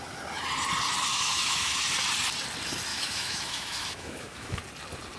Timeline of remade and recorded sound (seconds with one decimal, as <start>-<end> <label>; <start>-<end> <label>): 0.0-1.1 recorded; 1.1-1.8 remade; 1.8-2.9 recorded; 2.9-4.6 remade; 4.6-5.2 recorded